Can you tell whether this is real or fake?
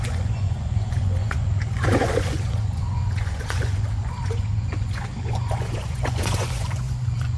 fake